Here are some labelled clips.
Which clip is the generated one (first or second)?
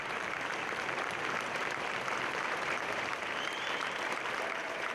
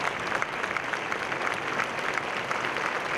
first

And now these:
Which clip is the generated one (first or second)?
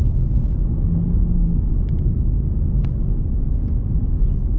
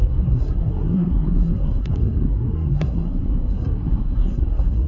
second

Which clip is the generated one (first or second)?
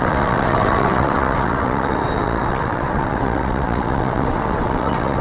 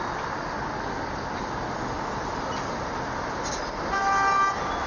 first